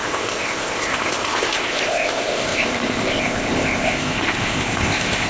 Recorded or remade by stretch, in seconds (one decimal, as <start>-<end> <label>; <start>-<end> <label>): 0.0-5.3 remade